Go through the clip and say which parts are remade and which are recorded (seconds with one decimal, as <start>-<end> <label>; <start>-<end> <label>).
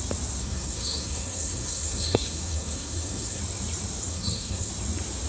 0.0-0.4 recorded; 0.4-3.4 remade; 3.4-4.1 recorded; 4.1-4.7 remade; 4.7-5.3 recorded